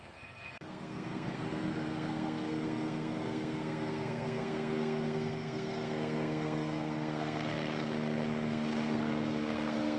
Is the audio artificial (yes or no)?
yes